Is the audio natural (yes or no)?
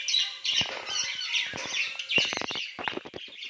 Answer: yes